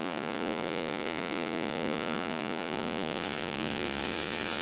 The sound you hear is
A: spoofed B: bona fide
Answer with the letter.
A